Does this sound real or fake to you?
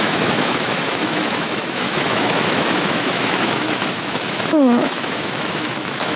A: fake